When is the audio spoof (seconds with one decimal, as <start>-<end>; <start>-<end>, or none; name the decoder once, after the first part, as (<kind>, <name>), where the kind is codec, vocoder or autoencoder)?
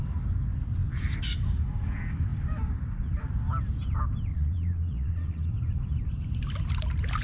4.3-5.5 (vocoder, Vocos)